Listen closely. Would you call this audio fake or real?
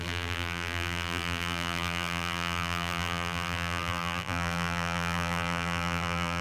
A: fake